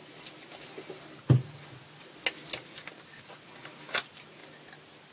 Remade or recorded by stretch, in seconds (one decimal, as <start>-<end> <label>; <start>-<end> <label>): 0.0-5.1 recorded